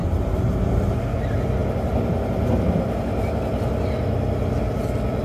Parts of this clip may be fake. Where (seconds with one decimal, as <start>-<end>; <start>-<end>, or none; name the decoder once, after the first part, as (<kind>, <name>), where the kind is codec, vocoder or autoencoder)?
0.0-1.0 (vocoder, BigVGAN v2)